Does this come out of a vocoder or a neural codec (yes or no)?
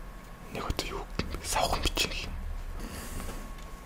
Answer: no